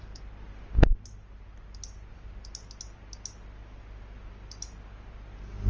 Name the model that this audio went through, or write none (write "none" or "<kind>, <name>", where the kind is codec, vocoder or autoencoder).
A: none